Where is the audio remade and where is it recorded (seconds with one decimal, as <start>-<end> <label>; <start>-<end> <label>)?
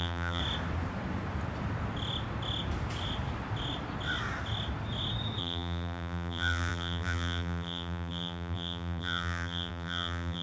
0.0-0.4 remade; 0.4-5.4 recorded; 5.4-10.4 remade